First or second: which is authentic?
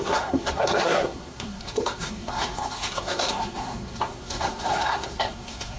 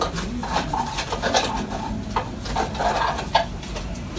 second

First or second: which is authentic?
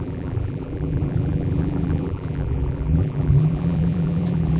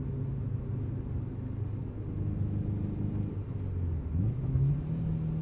second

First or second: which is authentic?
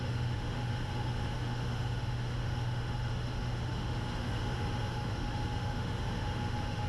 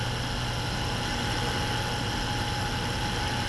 second